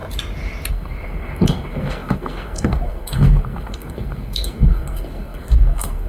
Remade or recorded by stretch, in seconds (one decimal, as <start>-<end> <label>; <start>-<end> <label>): 0.0-0.7 recorded; 0.7-6.1 remade